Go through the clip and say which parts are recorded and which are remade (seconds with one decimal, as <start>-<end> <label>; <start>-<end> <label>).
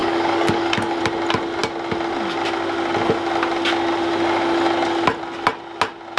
0.0-1.0 remade; 1.0-6.2 recorded